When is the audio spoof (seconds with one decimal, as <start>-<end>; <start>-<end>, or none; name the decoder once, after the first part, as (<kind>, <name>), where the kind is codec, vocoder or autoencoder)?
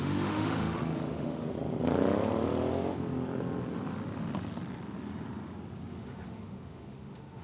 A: 0.0-1.5 (autoencoder, DAC-VAE); 5.9-7.4